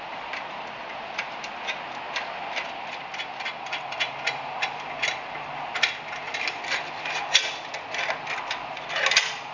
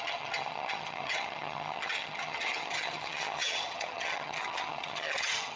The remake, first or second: second